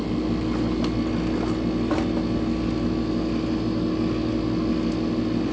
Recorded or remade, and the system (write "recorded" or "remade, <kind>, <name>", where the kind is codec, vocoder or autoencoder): recorded